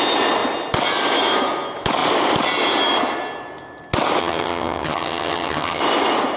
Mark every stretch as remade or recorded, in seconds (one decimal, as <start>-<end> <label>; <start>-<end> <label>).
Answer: 0.0-4.2 recorded; 4.2-5.8 remade; 5.8-6.4 recorded